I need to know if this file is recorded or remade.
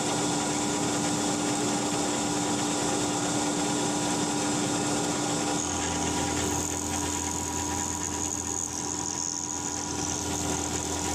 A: recorded